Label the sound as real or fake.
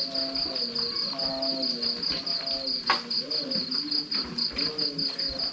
real